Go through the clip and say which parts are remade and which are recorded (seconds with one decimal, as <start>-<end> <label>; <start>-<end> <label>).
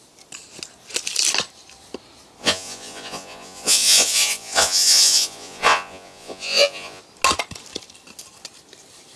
0.0-2.4 recorded; 2.4-7.0 remade; 7.0-9.2 recorded